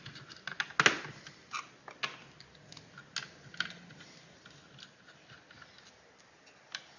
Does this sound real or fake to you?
real